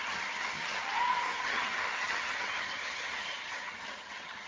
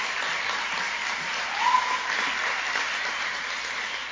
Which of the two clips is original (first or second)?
second